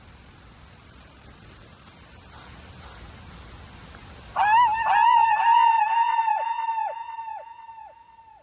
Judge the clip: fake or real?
real